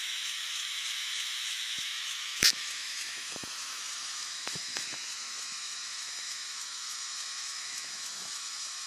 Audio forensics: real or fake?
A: fake